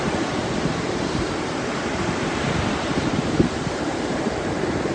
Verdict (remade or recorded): remade